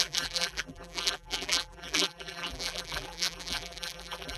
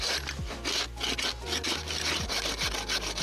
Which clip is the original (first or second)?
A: second